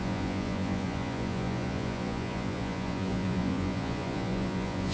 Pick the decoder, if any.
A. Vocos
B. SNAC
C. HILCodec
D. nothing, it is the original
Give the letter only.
A